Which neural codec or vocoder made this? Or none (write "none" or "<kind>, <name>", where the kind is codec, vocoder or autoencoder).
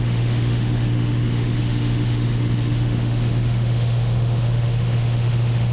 autoencoder, DAC-VAE